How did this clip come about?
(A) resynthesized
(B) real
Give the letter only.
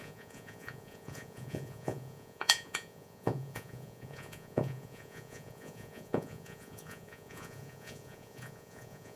A